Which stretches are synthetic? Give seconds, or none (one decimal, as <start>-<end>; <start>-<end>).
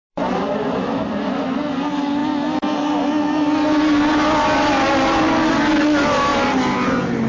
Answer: none